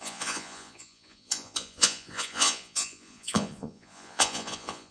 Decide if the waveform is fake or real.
fake